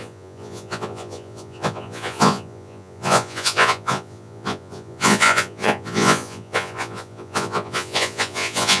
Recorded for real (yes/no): no